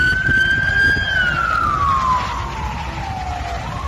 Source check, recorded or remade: recorded